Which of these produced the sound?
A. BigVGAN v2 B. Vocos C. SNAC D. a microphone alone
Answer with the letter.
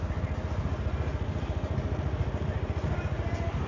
D